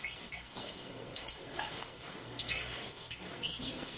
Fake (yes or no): yes